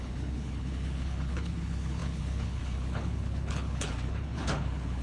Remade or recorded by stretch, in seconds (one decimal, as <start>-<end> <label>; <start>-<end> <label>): 0.0-5.0 remade